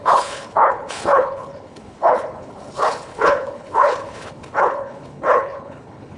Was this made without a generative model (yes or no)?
no